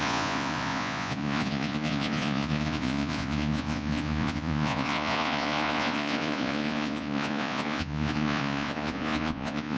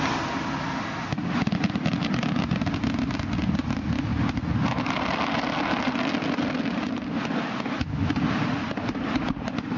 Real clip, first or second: second